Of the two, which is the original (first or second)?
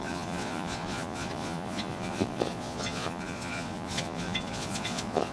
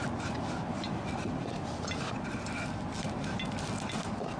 second